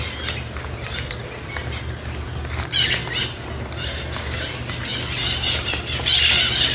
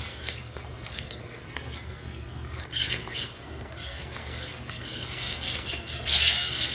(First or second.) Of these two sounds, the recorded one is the first